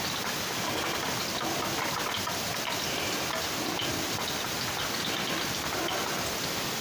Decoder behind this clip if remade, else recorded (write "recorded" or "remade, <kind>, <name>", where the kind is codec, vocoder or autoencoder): recorded